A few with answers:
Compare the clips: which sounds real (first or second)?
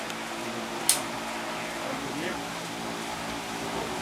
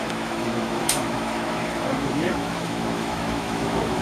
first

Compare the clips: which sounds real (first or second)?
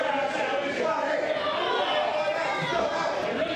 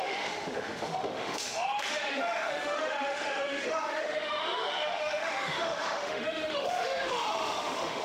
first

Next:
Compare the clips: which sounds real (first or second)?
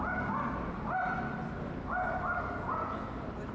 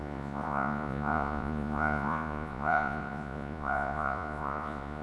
first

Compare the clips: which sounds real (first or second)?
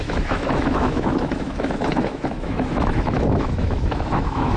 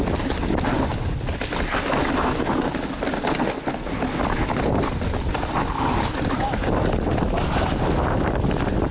second